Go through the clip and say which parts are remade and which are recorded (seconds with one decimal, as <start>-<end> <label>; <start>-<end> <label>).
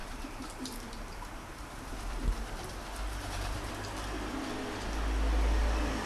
0.0-3.7 remade; 3.7-6.1 recorded